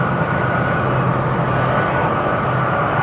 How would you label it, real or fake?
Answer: real